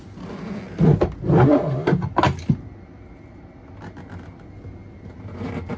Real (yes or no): yes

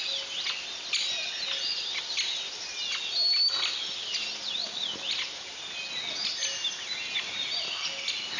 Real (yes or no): yes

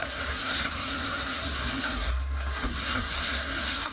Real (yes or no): no